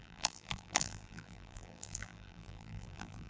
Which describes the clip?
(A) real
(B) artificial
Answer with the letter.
B